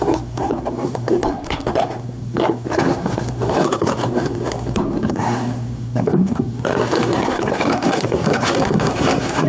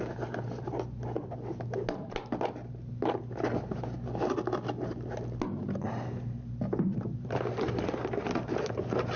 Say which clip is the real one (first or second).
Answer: second